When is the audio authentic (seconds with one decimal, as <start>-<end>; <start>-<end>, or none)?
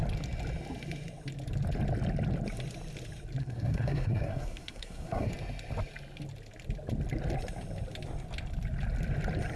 0.0-3.4; 5.3-9.6